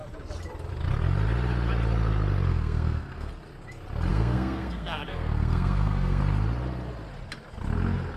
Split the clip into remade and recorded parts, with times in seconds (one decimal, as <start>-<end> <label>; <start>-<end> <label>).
0.0-2.5 recorded; 2.5-3.3 remade; 3.3-4.1 recorded; 4.1-6.2 remade; 6.2-8.2 recorded